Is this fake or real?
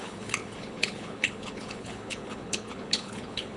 fake